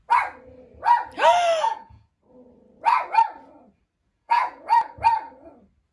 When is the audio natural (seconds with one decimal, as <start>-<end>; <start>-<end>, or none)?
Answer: 0.0-1.6; 2.2-4.0; 4.9-5.9